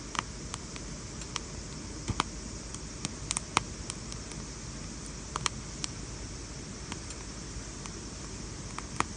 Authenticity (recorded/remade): recorded